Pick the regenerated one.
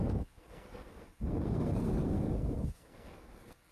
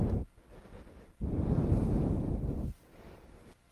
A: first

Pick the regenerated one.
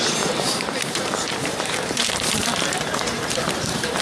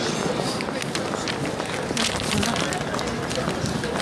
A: first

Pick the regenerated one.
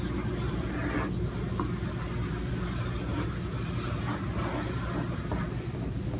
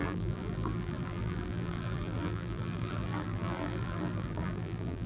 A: second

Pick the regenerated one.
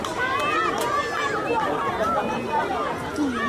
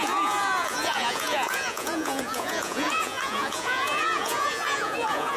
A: second